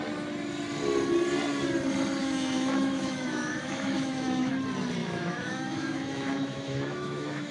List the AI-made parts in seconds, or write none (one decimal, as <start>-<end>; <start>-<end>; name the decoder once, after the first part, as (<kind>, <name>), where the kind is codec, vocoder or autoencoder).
2.2-4.5 (autoencoder, DAC-VAE); 5.0-7.5